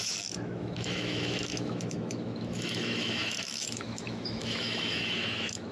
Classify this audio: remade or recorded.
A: remade